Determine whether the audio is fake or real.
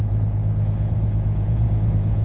fake